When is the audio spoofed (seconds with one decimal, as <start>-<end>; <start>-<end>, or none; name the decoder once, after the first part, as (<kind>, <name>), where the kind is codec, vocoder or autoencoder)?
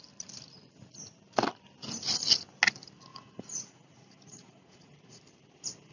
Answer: 3.1-5.2 (vocoder, Vocos)